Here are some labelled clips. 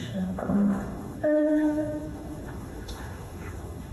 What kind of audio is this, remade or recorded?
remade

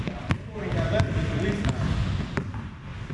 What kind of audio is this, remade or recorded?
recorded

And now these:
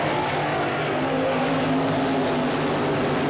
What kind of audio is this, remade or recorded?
recorded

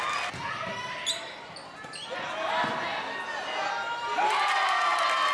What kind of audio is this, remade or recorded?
recorded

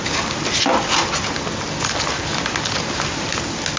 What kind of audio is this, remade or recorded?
recorded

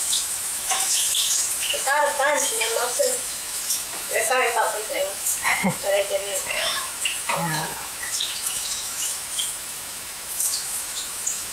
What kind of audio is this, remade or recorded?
remade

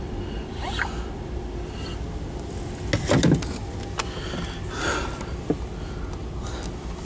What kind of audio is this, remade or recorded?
recorded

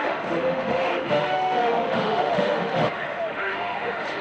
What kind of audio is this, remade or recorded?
remade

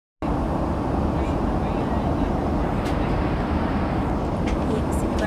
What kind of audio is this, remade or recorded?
recorded